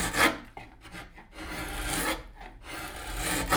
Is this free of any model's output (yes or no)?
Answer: yes